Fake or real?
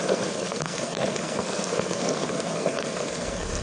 fake